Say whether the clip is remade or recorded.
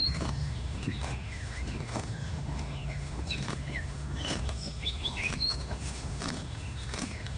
remade